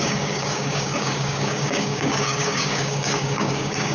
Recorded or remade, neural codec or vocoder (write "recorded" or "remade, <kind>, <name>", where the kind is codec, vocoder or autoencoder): remade, codec, DAC